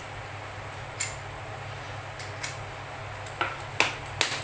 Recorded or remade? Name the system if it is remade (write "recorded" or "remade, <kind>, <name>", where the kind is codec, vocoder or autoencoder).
recorded